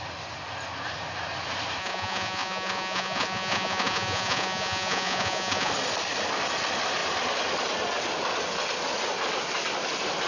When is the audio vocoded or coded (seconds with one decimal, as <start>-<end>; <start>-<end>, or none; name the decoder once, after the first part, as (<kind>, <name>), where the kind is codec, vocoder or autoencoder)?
1.8-5.7 (vocoder, Vocos)